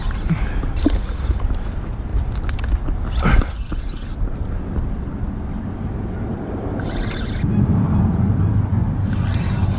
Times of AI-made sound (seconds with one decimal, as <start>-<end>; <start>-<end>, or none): none